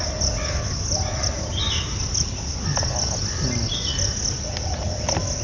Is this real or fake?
real